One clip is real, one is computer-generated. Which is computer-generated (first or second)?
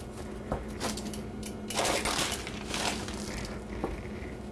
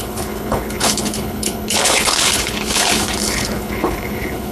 second